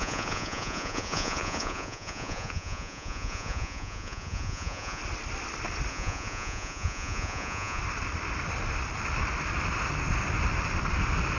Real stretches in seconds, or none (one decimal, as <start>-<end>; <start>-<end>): 5.0-5.9; 7.8-11.4